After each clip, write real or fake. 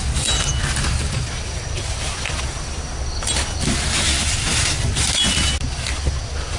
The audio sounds real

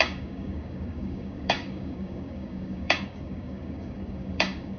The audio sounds fake